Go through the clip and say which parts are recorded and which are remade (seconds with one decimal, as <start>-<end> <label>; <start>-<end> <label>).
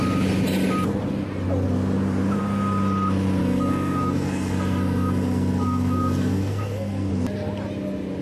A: 0.0-3.4 recorded; 3.4-7.1 remade; 7.1-8.2 recorded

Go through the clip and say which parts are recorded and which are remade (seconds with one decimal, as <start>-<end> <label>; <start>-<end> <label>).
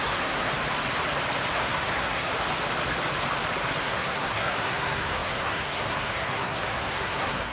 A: 0.0-0.5 remade; 0.5-1.5 recorded; 1.5-2.3 remade; 2.3-3.8 recorded; 3.8-7.5 remade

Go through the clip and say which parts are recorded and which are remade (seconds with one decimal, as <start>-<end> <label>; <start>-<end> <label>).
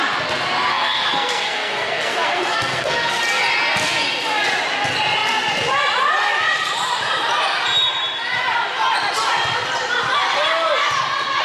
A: 0.0-0.7 recorded; 0.7-3.2 remade; 3.2-11.4 recorded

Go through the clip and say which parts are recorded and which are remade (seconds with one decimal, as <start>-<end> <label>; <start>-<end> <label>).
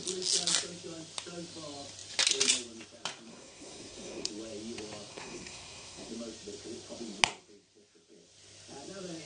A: 0.0-3.3 recorded; 3.3-4.3 remade; 4.3-5.1 recorded; 5.1-6.1 remade; 6.1-9.3 recorded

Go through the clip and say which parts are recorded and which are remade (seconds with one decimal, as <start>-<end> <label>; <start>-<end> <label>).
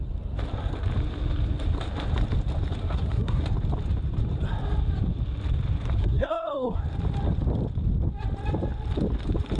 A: 0.0-2.8 recorded; 2.8-3.4 remade; 3.4-6.0 recorded; 6.0-6.8 remade; 6.8-9.6 recorded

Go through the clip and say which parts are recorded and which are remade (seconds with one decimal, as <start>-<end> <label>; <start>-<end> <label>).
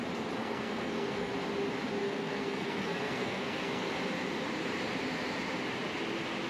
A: 0.0-0.4 recorded; 0.4-1.3 remade; 1.3-2.0 recorded; 2.0-3.9 remade; 3.9-6.5 recorded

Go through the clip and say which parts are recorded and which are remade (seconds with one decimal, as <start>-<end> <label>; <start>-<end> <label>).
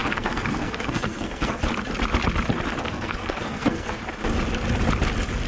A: 0.0-1.6 remade; 1.6-2.8 recorded; 2.8-4.0 remade; 4.0-5.5 recorded